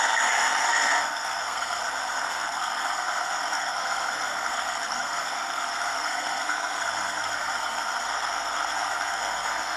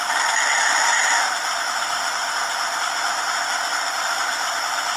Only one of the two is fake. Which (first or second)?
first